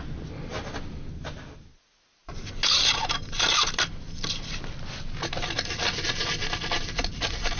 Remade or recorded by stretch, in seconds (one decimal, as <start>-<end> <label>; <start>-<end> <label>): 0.0-7.6 recorded